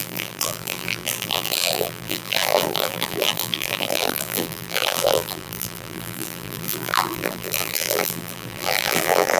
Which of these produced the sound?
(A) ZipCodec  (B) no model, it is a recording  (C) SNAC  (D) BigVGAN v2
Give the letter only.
D